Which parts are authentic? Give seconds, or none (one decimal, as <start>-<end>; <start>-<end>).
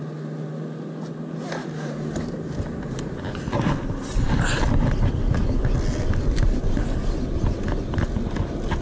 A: 0.0-1.6; 3.7-8.8